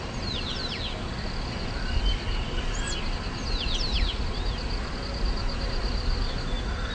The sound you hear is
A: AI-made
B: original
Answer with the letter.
B